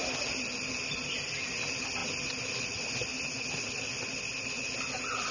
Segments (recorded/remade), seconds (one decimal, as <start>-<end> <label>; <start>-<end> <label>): 0.0-5.3 recorded

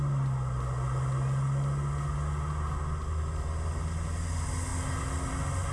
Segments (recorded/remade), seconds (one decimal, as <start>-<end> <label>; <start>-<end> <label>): 0.0-5.7 recorded

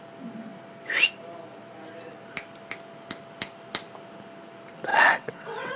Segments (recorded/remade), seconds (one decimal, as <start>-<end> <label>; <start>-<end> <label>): 0.0-4.9 recorded; 4.9-5.8 remade

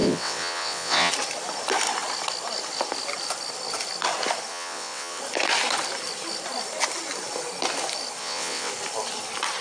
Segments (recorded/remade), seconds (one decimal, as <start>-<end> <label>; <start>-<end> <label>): 0.0-1.1 remade; 1.1-4.5 recorded; 4.5-5.2 remade; 5.2-8.2 recorded; 8.2-8.7 remade; 8.7-9.6 recorded

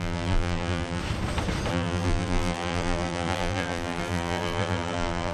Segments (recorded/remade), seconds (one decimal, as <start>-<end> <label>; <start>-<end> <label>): 0.0-1.0 remade; 1.0-1.7 recorded; 1.7-5.3 remade

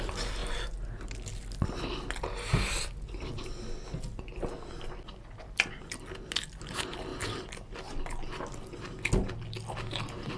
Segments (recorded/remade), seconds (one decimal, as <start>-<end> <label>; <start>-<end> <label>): 0.0-10.4 recorded